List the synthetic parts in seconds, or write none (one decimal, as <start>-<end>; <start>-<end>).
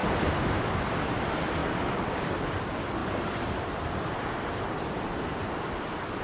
0.0-0.6; 1.6-2.3; 3.0-5.0